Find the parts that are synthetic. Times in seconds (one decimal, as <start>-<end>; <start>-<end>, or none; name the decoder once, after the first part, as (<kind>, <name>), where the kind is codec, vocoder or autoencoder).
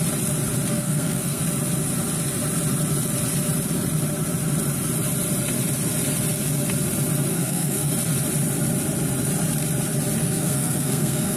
0.7-1.4 (codec, SNAC); 7.3-7.9; 10.2-11.4